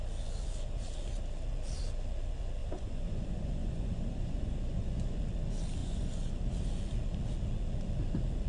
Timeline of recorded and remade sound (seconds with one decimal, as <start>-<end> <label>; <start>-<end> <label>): 0.0-2.6 recorded; 2.6-5.2 remade; 5.2-5.8 recorded; 5.8-6.3 remade; 6.3-8.5 recorded